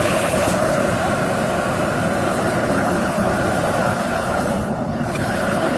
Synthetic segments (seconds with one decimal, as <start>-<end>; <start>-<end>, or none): 0.0-0.8; 2.3-3.3; 3.8-5.8